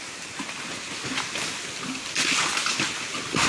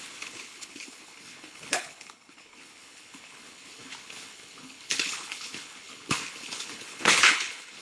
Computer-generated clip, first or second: second